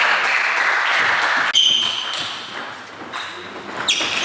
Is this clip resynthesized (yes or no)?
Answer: no